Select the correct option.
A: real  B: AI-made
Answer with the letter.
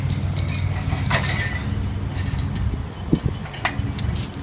A